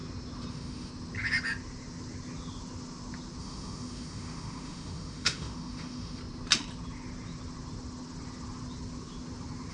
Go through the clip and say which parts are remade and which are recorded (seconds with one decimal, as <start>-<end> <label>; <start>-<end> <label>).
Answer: 0.0-0.5 recorded; 0.5-0.9 remade; 0.9-3.4 recorded; 3.4-6.2 remade; 6.2-9.7 recorded

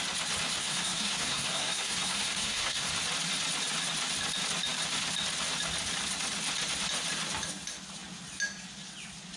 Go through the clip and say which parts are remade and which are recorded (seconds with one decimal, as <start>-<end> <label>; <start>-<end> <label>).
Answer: 0.0-0.6 recorded; 0.6-2.9 remade; 2.9-9.4 recorded